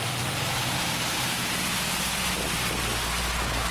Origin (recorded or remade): recorded